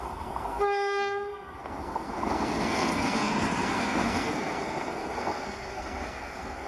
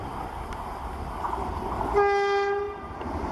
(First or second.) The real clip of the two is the second